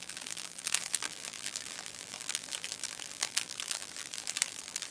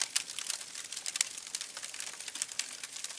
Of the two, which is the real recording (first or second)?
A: second